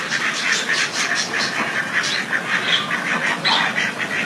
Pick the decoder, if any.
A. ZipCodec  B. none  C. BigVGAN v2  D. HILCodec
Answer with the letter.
B